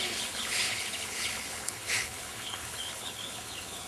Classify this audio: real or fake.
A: fake